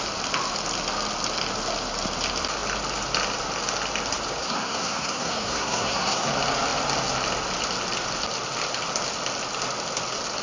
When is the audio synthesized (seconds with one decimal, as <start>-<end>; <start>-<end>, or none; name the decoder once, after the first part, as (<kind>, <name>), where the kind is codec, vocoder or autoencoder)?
4.4-6.3 (codec, SNAC)

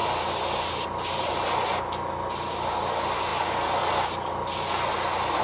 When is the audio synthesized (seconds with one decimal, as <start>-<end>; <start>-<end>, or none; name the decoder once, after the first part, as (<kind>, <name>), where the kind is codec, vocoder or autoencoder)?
0.0-1.3 (vocoder, BigVGAN v2)

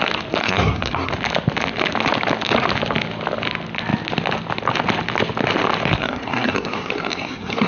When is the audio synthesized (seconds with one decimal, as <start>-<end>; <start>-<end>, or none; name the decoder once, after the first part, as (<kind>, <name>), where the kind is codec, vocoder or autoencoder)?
0.4-1.1 (codec, SNAC); 6.0-7.7

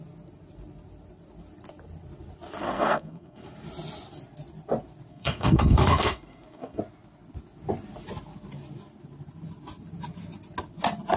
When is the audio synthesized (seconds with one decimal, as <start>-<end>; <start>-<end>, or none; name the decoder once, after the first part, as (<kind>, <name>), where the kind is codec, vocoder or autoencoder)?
2.6-3.5 (codec, SNAC); 5.1-6.8